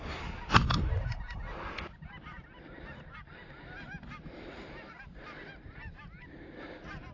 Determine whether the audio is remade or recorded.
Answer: recorded